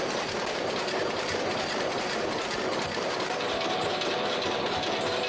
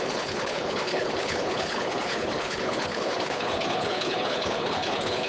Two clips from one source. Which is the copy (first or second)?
second